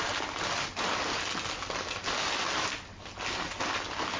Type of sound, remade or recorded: recorded